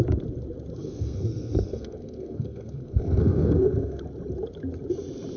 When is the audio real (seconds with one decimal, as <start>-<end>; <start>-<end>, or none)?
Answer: 0.0-0.8; 4.0-5.4